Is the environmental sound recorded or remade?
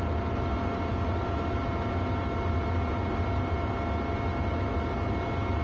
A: recorded